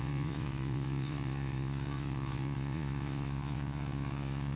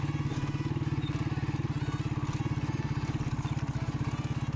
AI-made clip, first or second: first